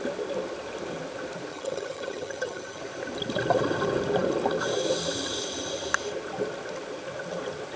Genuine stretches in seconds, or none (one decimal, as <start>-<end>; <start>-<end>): 0.0-1.5; 2.8-7.8